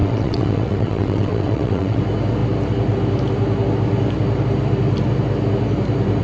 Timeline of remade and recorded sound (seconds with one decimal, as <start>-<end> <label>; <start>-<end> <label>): 0.0-2.0 remade; 2.0-6.2 recorded